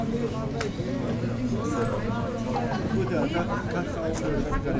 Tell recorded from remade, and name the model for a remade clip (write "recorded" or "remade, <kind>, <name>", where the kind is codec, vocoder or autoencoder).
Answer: recorded